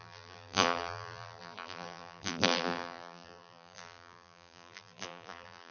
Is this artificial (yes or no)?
yes